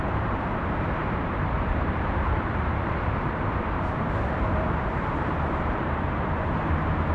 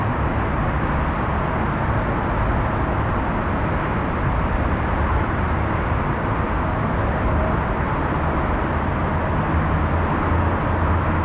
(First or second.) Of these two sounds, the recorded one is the second